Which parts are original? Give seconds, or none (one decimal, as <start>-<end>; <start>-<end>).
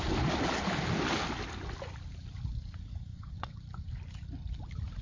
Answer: 0.0-3.1; 3.6-5.0